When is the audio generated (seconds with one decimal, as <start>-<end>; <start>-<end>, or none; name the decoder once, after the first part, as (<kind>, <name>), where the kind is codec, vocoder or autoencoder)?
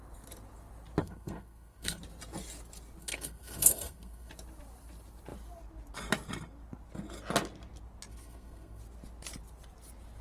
1.0-2.0 (codec, SNAC); 3.0-4.3; 8.1-8.8